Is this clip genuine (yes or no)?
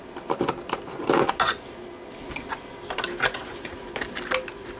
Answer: yes